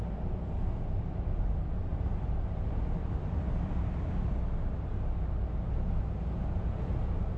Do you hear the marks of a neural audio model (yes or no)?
no